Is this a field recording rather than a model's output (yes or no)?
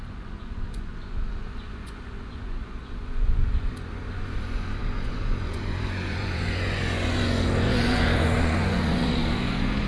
no